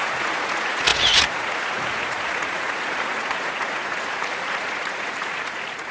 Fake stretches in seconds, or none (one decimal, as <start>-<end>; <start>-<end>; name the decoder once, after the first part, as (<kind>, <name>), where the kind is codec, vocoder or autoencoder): 0.0-5.9 (vocoder, Vocos)